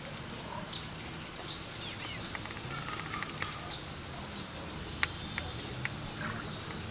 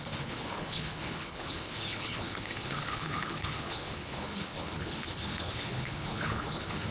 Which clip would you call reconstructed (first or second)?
second